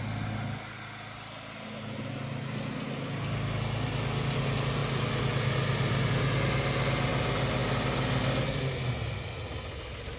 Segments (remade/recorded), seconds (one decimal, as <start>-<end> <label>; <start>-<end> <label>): 0.0-10.2 recorded